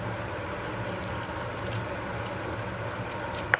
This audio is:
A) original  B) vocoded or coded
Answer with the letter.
B